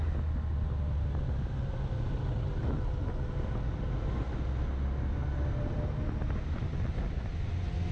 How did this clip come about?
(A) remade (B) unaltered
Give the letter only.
B